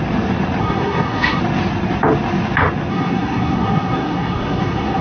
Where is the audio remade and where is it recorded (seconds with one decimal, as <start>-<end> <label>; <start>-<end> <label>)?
0.0-0.6 recorded; 0.6-1.4 remade; 1.4-2.9 recorded; 2.9-5.0 remade